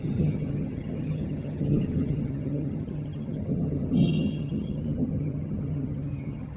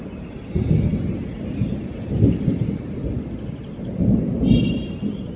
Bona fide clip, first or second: second